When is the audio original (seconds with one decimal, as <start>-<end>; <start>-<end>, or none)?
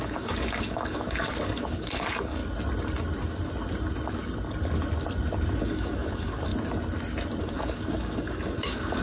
2.4-5.6; 6.5-7.4